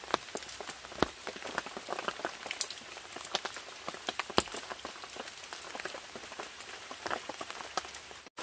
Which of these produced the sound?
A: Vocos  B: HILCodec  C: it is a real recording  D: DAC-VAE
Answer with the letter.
C